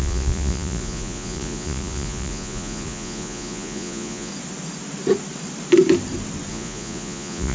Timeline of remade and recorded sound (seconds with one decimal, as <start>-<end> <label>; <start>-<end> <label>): 0.0-4.3 remade; 4.3-6.5 recorded; 6.5-7.5 remade